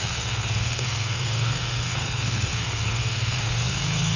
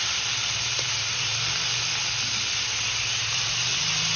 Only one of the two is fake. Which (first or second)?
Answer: first